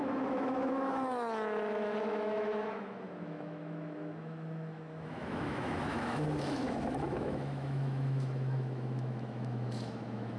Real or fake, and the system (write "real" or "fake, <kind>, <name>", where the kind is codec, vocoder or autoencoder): fake, autoencoder, DAC-VAE